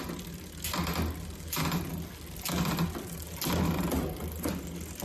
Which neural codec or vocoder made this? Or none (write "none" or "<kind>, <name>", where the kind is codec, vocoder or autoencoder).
none